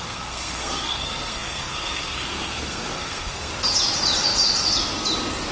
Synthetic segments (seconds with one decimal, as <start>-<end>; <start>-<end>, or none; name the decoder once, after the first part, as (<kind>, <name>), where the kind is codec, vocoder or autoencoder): 0.0-3.5 (codec, SNAC)